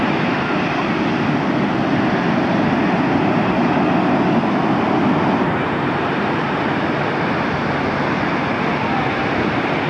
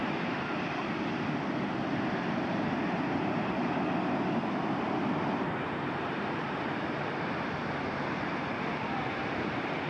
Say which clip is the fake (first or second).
second